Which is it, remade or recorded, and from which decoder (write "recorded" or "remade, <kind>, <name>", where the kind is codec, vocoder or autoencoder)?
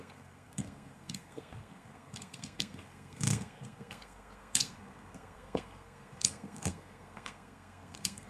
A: remade, codec, SNAC